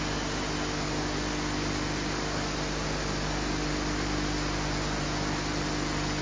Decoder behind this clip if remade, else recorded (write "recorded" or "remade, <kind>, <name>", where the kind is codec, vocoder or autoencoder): recorded